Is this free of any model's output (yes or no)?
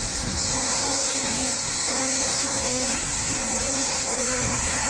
no